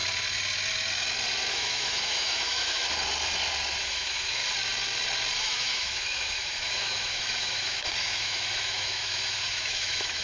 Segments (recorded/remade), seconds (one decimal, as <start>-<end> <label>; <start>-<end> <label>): 0.0-1.5 recorded; 1.5-2.8 remade; 2.8-3.8 recorded; 3.8-4.4 remade; 4.4-5.4 recorded; 5.4-10.2 remade